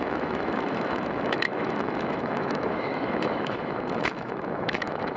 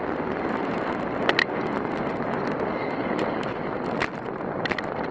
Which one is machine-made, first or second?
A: first